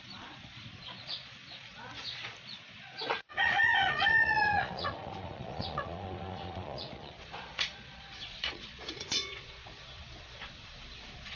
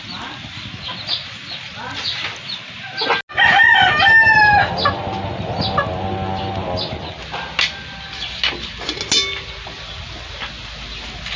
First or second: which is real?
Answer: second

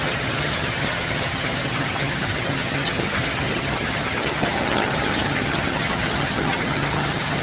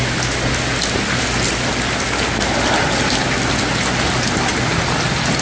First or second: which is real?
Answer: second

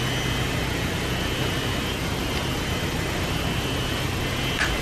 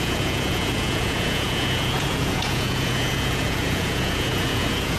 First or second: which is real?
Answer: first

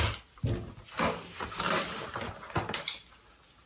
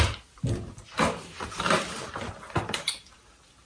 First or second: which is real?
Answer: first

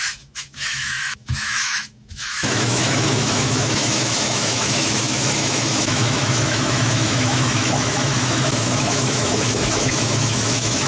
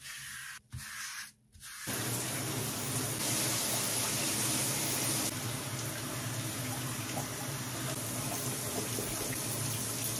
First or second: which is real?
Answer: second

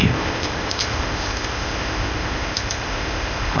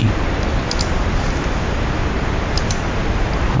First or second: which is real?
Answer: second